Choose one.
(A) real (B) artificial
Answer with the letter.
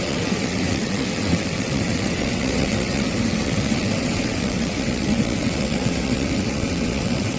B